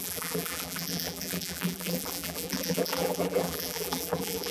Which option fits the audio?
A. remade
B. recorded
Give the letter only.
A